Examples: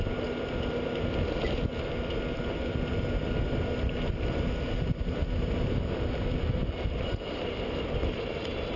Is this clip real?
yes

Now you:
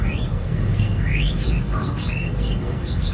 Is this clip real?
no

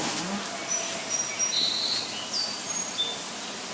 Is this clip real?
yes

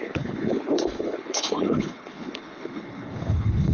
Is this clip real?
no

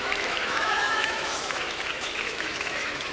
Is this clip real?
no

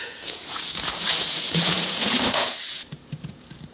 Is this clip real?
no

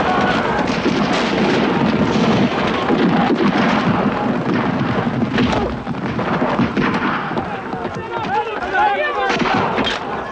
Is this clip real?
yes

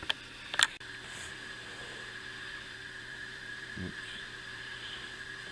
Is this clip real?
no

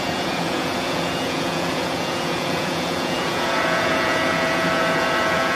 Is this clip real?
no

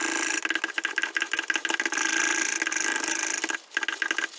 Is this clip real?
yes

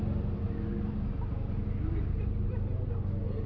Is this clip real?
yes